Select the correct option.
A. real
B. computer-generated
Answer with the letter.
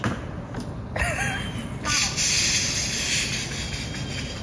A